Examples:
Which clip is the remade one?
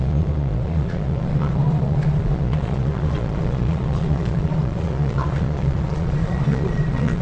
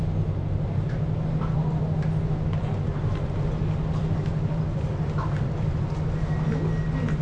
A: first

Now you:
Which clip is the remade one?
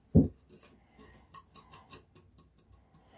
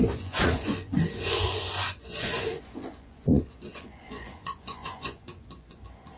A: second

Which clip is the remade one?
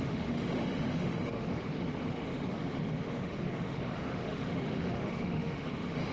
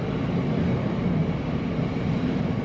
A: first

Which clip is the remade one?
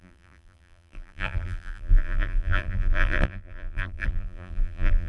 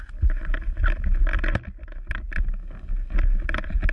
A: first